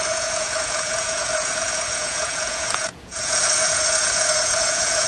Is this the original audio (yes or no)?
no